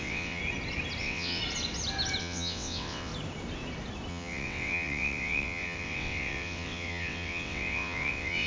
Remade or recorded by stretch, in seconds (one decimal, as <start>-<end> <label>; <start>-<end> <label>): 0.0-0.4 remade; 0.4-1.0 recorded; 1.0-1.4 remade; 1.4-2.2 recorded; 2.2-3.1 remade; 3.1-4.1 recorded; 4.1-8.5 remade